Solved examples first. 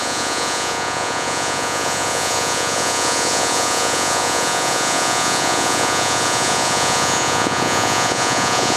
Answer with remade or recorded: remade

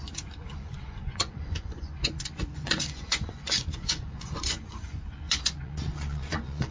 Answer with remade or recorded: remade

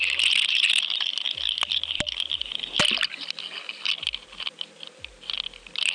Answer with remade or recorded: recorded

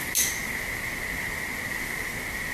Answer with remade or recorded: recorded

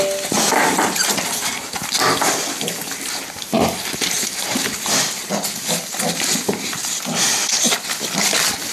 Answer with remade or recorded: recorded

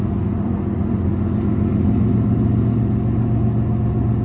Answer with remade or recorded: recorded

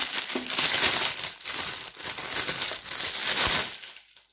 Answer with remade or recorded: recorded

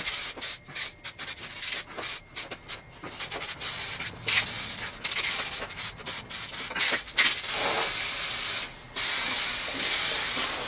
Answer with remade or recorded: recorded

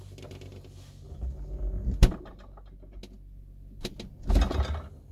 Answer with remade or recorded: recorded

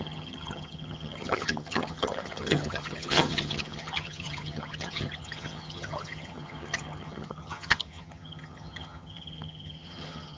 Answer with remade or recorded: remade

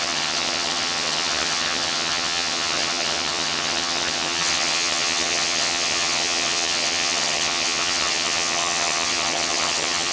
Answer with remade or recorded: remade